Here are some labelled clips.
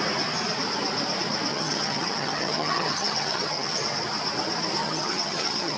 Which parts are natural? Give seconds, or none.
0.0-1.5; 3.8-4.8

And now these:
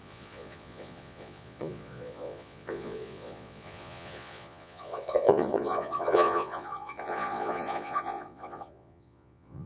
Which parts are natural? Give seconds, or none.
none

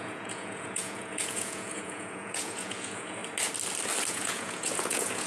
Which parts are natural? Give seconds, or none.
3.2-4.1